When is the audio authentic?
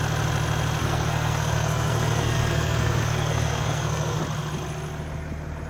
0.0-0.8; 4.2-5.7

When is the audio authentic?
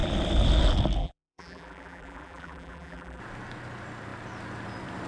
0.0-1.0; 3.2-5.1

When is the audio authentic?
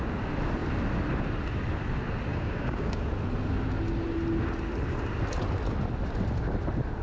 0.0-2.3; 3.1-7.0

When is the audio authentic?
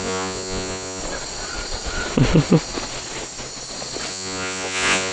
1.0-4.1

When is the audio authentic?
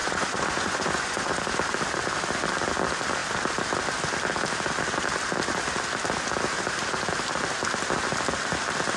1.3-9.0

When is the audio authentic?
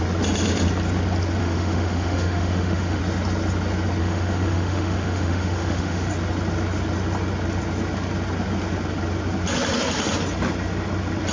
0.0-1.4; 3.0-4.0; 6.1-11.3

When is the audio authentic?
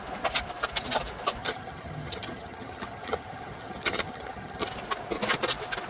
0.0-1.4; 4.7-5.9